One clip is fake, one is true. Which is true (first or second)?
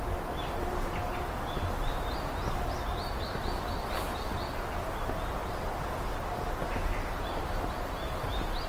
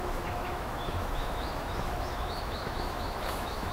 first